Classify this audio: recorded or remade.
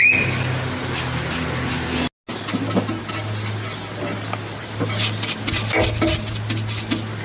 recorded